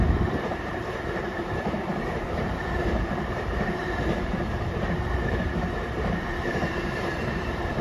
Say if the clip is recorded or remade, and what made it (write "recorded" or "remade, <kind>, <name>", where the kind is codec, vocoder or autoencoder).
remade, vocoder, BigVGAN v2